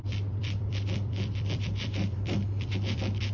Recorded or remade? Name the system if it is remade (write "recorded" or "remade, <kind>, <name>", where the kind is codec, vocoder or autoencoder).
remade, vocoder, BigVGAN v2